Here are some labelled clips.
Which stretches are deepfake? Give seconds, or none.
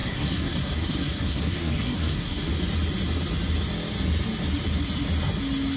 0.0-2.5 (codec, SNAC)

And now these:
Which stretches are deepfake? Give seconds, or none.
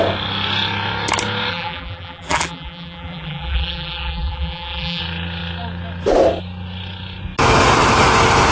1.5-5.0 (vocoder, BigVGAN v2)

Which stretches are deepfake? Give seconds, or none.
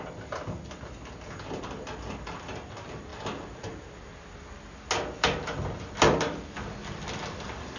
none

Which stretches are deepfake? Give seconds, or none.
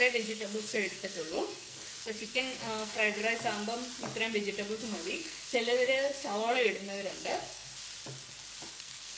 0.0-3.2 (codec, SNAC); 4.8-7.7; 8.7-9.2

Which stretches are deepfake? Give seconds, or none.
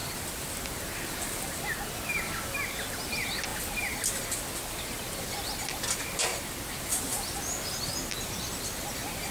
none